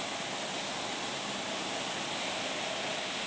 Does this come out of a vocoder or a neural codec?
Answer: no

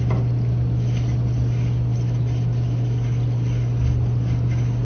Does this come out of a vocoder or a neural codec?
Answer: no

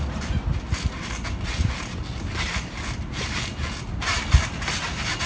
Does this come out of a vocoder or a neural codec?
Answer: no